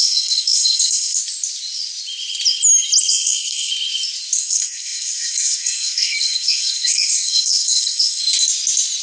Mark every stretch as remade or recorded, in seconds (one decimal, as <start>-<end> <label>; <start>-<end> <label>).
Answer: 0.0-1.2 remade; 1.2-3.1 recorded; 3.1-3.7 remade; 3.7-4.4 recorded; 4.4-8.2 remade; 8.2-9.0 recorded